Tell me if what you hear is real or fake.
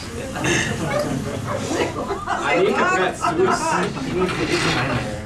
real